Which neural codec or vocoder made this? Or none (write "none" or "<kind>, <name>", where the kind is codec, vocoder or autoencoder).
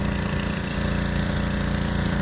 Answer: vocoder, BigVGAN v2